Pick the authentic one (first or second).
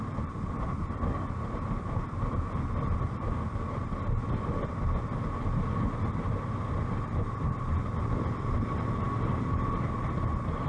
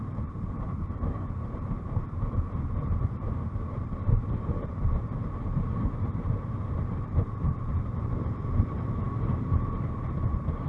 first